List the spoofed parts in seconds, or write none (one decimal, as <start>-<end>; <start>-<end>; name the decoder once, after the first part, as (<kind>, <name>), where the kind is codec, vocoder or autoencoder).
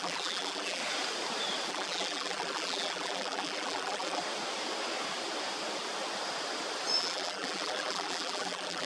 0.0-0.8 (vocoder, BigVGAN v2); 1.7-4.2; 7.0-8.9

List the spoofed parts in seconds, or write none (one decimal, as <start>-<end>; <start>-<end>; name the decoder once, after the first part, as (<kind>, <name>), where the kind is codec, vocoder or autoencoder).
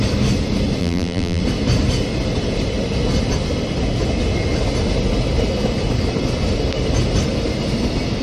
0.8-1.4 (vocoder, BigVGAN v2)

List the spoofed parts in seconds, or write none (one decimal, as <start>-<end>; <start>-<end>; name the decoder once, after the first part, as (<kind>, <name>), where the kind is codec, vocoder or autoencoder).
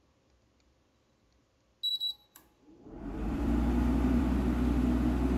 1.9-4.2 (vocoder, BigVGAN v2)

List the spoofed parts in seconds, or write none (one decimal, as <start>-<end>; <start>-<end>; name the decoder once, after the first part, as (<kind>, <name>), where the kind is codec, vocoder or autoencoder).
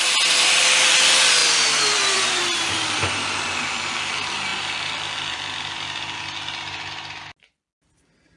1.4-4.1 (vocoder, BigVGAN v2)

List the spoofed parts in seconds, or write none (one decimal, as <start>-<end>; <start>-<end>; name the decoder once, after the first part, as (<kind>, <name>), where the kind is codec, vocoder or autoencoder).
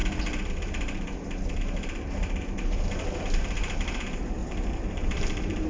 4.4-5.7 (vocoder, BigVGAN v2)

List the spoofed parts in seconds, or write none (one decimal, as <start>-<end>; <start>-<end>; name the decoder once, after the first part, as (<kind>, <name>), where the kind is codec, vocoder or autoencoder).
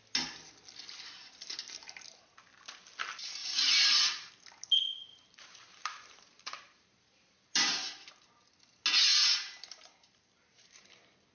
3.4-4.3 (vocoder, BigVGAN v2); 5.1-8.1; 9.1-10.8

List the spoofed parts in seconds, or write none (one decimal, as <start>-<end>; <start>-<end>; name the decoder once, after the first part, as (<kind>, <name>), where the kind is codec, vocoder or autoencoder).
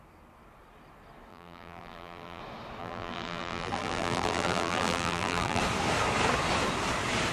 1.3-2.4 (vocoder, BigVGAN v2); 2.8-5.6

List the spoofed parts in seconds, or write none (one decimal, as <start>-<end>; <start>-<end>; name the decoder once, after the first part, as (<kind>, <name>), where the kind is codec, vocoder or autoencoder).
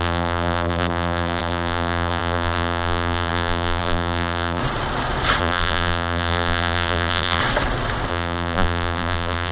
0.0-4.6 (vocoder, BigVGAN v2); 5.4-7.4; 8.1-9.5